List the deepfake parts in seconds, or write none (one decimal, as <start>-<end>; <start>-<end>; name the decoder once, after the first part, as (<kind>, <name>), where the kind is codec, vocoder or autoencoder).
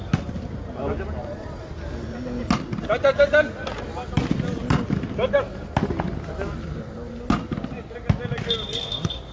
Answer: 1.2-1.7 (vocoder, Vocos)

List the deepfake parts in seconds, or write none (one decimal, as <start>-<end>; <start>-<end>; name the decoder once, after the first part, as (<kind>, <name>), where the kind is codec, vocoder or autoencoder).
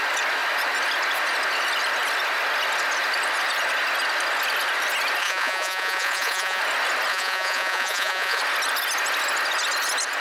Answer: 5.2-6.6 (vocoder, Vocos); 7.1-8.4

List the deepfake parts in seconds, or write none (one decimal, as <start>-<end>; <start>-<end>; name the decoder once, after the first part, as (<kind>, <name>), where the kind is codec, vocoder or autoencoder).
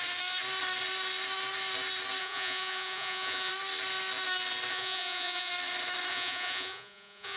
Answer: 2.2-3.5 (vocoder, Vocos); 4.7-5.5; 6.1-7.4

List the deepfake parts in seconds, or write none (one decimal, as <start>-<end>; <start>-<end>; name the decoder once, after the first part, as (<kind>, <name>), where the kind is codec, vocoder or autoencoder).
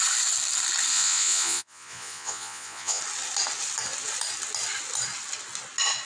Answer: 0.9-3.0 (vocoder, Vocos)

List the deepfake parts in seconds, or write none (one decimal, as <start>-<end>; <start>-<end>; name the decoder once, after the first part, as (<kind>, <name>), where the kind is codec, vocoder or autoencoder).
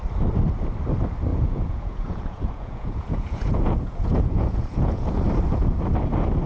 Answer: 1.3-5.2 (vocoder, Vocos)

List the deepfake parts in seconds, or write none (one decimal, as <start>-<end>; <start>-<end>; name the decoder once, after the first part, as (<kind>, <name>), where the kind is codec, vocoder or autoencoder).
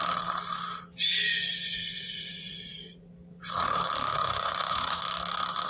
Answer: 1.8-3.1 (vocoder, Vocos); 4.1-5.0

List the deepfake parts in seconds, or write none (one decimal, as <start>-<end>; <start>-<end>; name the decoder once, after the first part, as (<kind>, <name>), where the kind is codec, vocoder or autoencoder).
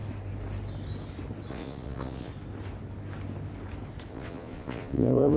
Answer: 1.5-2.3 (vocoder, Vocos); 4.1-5.4